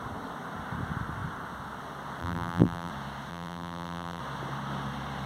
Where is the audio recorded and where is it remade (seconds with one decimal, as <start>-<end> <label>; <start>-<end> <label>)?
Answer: 0.0-2.2 recorded; 2.2-2.9 remade; 2.9-3.3 recorded; 3.3-4.2 remade; 4.2-5.3 recorded